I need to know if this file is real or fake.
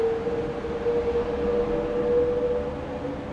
real